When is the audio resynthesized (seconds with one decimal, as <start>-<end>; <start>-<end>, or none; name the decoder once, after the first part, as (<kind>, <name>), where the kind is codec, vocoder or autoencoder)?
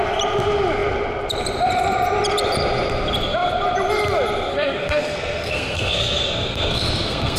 4.5-7.4 (codec, SNAC)